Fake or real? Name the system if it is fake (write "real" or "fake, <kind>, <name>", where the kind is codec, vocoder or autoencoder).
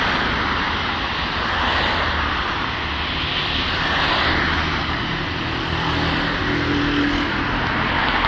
real